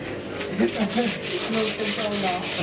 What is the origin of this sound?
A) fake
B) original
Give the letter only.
B